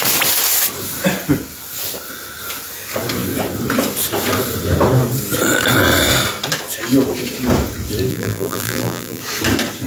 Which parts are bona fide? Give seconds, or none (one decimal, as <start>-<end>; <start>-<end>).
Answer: 0.0-8.1; 9.2-9.9